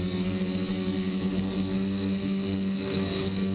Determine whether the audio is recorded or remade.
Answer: remade